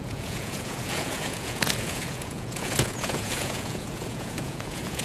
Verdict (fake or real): fake